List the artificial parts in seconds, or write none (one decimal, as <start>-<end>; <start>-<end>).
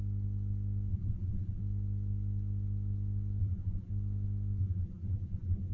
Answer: 0.9-1.6; 3.4-3.9; 4.6-5.7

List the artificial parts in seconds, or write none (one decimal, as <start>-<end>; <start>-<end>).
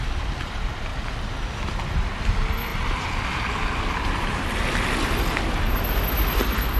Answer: 0.0-0.9; 1.7-6.8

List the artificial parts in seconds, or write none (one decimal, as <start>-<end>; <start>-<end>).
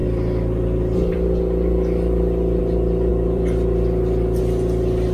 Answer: 3.1-4.4